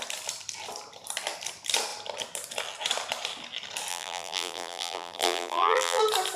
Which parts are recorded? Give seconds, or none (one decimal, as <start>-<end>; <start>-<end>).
0.0-3.9; 6.0-6.4